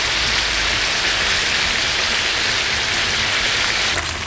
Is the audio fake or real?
real